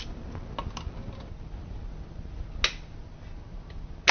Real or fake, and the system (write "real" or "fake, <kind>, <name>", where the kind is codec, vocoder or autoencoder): real